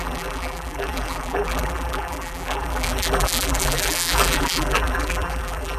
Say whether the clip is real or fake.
fake